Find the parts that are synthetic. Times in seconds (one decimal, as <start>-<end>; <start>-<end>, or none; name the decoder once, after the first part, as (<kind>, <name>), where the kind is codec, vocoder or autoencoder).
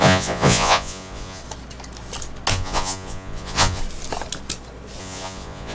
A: 0.0-1.4 (vocoder, Vocos); 2.5-3.8; 5.0-5.7